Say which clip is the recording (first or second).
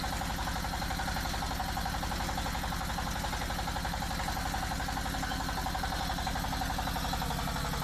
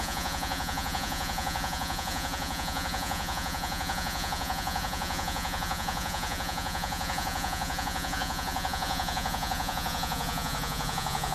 first